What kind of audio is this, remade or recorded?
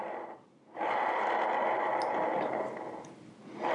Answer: recorded